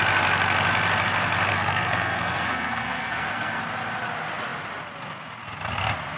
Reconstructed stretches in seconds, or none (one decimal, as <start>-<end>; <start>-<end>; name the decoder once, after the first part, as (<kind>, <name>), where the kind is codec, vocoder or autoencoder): 1.5-3.6 (codec, SNAC)